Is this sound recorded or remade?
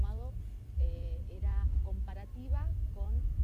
remade